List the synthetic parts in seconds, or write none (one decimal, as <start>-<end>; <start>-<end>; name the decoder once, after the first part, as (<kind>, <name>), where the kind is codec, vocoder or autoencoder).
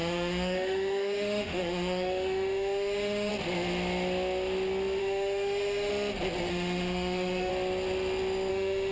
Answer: 0.0-3.3 (autoencoder, DAC-VAE); 5.0-5.9; 6.5-7.5; 8.5-8.9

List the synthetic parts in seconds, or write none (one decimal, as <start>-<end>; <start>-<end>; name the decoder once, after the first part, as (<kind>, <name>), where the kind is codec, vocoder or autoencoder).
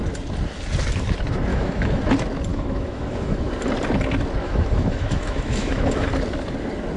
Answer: 1.5-2.0 (autoencoder, DAC-VAE); 2.5-3.5; 4.4-6.1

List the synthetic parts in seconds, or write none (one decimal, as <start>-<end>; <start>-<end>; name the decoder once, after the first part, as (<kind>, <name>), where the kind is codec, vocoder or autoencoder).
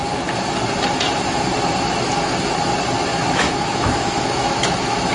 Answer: 3.1-5.1 (autoencoder, DAC-VAE)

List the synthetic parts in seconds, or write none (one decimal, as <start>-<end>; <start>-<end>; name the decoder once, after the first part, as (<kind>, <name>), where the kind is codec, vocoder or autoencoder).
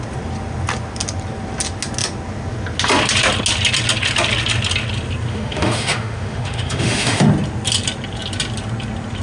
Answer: 5.3-7.3 (autoencoder, DAC-VAE)